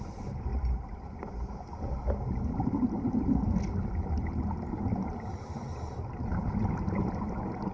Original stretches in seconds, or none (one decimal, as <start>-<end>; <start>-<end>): 0.0-7.7